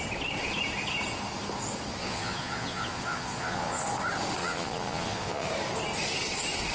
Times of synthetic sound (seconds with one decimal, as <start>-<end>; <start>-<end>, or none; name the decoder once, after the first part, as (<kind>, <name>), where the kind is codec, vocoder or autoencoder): 2.0-3.8 (vocoder, Vocos); 4.4-5.5